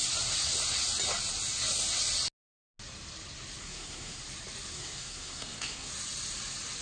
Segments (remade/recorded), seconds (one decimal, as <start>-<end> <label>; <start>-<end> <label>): 0.0-3.6 recorded; 3.6-4.2 remade; 4.2-4.7 recorded; 4.7-5.9 remade; 5.9-6.8 recorded